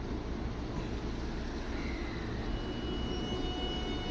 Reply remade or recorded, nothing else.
recorded